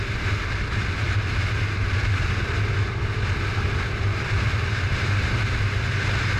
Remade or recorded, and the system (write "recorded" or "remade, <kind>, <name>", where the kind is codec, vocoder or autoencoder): recorded